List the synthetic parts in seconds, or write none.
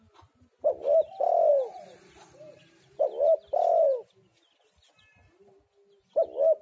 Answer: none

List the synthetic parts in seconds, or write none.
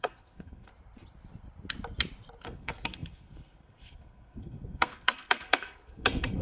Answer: 0.0-0.7 (codec, SNAC); 2.4-6.4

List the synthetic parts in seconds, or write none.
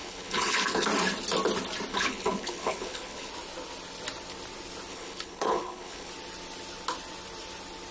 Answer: 0.0-0.9 (codec, HILCodec); 1.9-3.3; 4.9-6.1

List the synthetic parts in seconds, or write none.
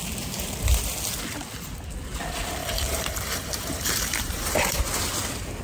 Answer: 2.6-4.8 (vocoder, BigVGAN v2)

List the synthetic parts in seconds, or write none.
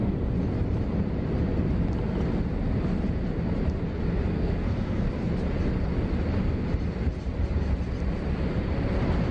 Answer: 4.3-5.1 (codec, SNAC)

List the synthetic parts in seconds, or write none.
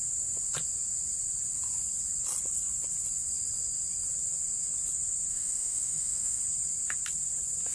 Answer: 5.3-6.4 (autoencoder, DAC-VAE)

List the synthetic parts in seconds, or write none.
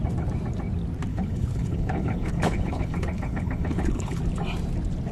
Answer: 1.1-4.2 (codec, HILCodec)